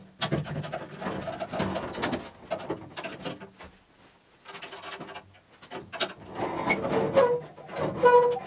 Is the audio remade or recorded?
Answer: recorded